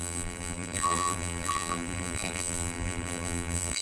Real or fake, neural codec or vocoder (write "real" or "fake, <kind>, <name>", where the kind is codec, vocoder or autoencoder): fake, vocoder, BigVGAN v2